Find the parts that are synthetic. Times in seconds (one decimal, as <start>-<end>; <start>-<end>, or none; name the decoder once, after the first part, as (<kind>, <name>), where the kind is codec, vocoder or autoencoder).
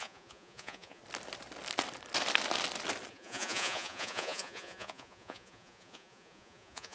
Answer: 0.0-1.0 (vocoder, Vocos); 3.1-6.9